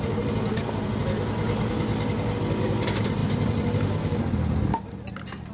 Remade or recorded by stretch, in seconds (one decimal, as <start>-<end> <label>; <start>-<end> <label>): 0.0-5.5 recorded